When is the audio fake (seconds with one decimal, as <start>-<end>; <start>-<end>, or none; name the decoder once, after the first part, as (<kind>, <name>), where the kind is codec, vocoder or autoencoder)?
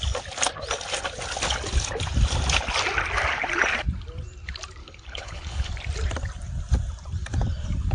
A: 4.8-5.7 (codec, HILCodec)